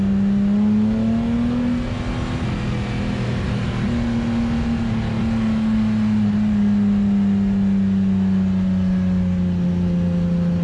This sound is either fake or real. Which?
real